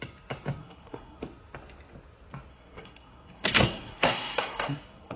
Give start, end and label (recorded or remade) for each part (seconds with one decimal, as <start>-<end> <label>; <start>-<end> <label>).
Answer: 0.0-0.6 recorded; 0.6-1.2 remade; 1.2-2.5 recorded; 2.5-5.2 remade